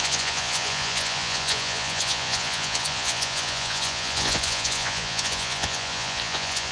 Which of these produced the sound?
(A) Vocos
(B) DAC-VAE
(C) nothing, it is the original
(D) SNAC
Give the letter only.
A